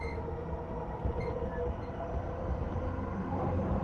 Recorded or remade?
recorded